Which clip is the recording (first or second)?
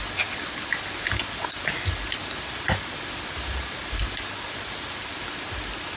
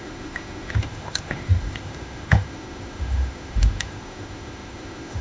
first